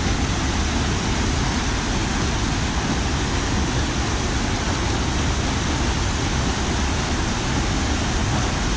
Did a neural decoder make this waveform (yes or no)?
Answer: no